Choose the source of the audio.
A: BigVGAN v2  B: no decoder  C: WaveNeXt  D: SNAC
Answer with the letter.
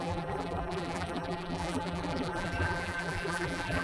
A